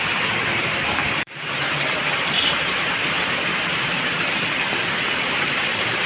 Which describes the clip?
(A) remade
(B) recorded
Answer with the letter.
A